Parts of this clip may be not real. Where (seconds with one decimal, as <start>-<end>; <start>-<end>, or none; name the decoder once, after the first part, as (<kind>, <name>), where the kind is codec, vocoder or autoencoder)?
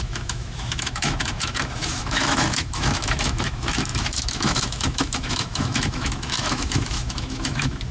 0.0-7.9 (autoencoder, DAC-VAE)